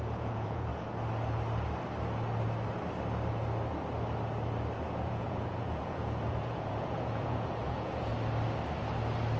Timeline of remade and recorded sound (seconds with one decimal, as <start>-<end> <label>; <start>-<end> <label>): 0.0-0.7 remade; 0.7-5.0 recorded; 5.0-8.1 remade; 8.1-9.4 recorded